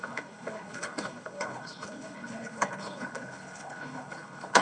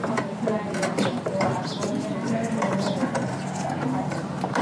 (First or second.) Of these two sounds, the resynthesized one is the first